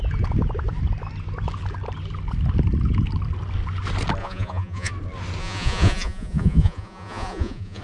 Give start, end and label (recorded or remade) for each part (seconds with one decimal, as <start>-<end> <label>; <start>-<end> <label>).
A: 0.0-4.2 recorded; 4.2-4.9 remade; 4.9-5.4 recorded; 5.4-7.8 remade